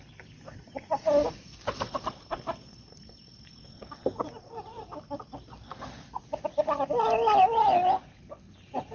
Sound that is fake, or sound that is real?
real